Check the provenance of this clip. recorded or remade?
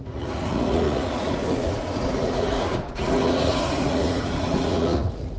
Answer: remade